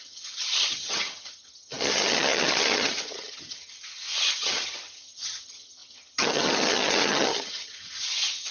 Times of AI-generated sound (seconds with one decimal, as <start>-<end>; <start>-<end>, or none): 0.0-8.5